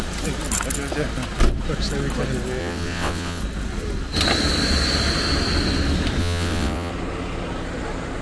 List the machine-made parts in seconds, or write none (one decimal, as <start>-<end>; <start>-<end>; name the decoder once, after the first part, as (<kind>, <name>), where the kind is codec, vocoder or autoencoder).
2.6-3.4 (vocoder, WaveNeXt); 6.2-6.9